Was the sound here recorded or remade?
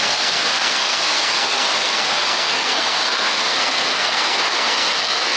remade